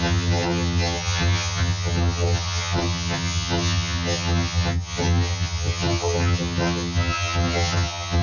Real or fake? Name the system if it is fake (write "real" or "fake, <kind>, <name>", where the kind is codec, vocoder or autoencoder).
fake, vocoder, HiFi-GAN